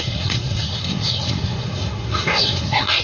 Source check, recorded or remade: remade